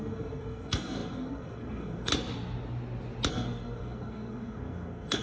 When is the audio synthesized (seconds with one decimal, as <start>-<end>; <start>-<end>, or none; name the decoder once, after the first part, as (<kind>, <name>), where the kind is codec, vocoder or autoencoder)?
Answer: 0.0-2.1 (codec, SNAC); 3.3-5.2